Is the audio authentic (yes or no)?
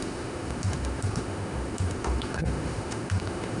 no